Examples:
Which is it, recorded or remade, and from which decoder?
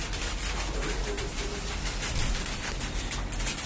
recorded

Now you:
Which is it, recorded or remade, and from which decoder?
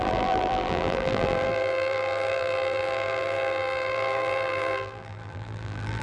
remade, vocoder, BigVGAN v2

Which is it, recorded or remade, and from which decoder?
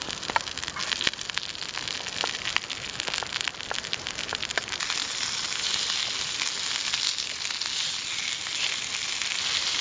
recorded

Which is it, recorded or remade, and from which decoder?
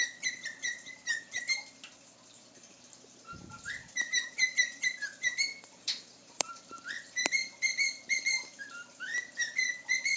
remade, vocoder, BigVGAN v2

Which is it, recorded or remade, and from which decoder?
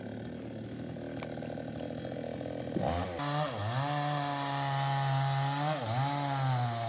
recorded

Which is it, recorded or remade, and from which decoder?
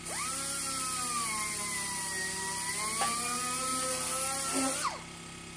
recorded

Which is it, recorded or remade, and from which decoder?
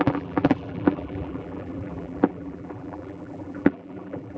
remade, vocoder, BigVGAN v2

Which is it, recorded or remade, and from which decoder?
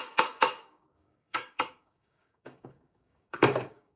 remade, codec, DAC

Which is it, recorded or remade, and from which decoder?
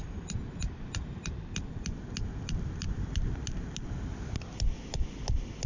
recorded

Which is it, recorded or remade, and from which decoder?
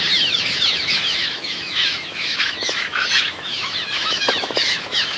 remade, autoencoder, DAC-VAE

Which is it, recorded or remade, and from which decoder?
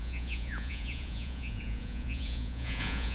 remade, vocoder, Vocos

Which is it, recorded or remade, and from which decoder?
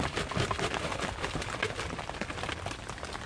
recorded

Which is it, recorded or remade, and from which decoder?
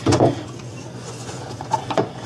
remade, vocoder, Vocos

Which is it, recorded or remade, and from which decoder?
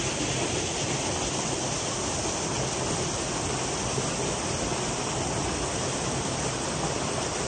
recorded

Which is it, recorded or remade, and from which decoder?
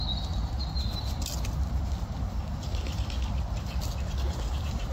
recorded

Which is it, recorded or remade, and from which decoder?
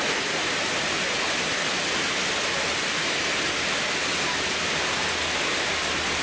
recorded